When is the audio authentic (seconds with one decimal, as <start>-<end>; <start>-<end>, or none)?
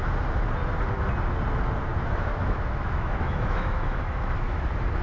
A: 0.0-1.9; 4.6-5.0